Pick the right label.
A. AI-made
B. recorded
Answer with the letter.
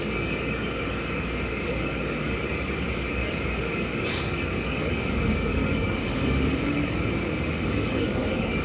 A